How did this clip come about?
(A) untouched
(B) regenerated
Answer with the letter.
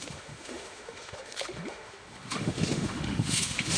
B